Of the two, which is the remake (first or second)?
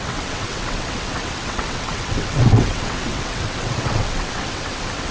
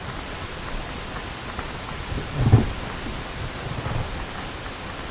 first